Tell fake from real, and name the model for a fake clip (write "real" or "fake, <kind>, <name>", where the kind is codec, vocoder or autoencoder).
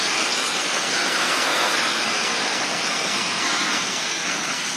fake, codec, SNAC